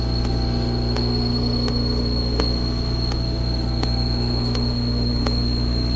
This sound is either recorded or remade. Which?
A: remade